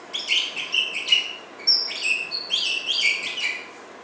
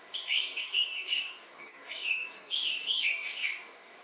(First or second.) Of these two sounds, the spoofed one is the second